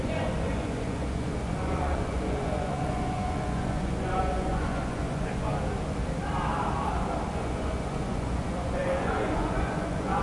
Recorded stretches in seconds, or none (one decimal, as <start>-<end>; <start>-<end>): 5.5-7.3